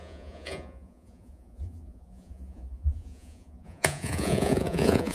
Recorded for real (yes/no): no